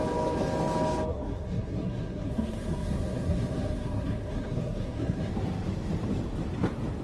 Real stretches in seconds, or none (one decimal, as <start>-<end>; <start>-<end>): 0.0-1.1; 5.3-7.0

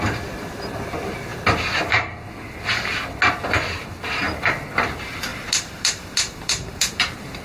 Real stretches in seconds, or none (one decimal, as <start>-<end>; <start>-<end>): 0.0-5.3

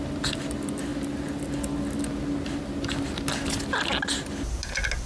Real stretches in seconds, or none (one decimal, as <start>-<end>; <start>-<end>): 0.0-5.1

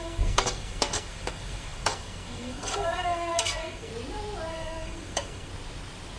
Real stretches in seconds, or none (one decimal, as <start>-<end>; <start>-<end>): 3.9-4.5; 5.5-6.2

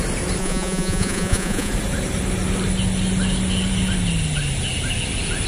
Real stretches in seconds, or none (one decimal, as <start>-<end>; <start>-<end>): 0.0-0.4; 1.7-5.5

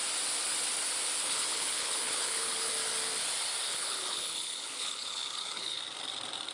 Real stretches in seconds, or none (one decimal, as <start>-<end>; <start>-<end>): 0.0-1.2; 2.7-3.7; 5.8-6.5